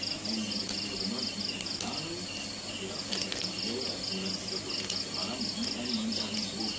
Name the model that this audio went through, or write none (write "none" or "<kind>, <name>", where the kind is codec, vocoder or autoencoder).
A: none